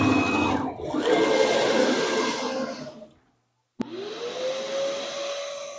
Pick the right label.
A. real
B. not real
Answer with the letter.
A